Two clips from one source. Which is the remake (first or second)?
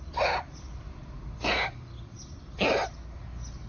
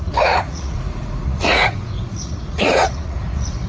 second